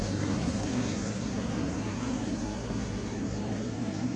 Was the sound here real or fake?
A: fake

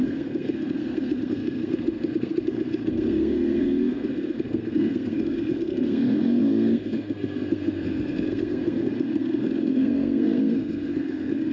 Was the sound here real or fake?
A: fake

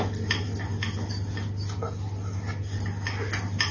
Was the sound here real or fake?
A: real